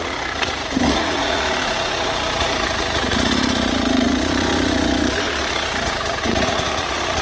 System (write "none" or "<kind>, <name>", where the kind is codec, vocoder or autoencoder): vocoder, Vocos